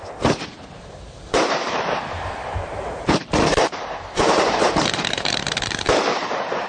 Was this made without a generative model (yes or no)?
no